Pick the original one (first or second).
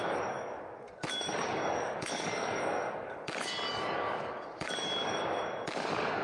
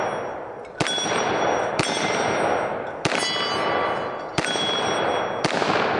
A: second